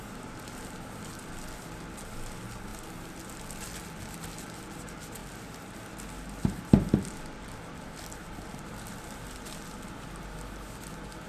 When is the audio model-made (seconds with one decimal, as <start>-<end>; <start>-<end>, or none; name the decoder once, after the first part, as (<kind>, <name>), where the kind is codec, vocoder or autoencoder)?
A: none